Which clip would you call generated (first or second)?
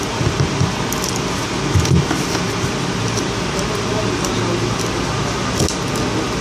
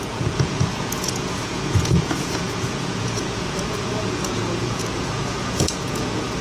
second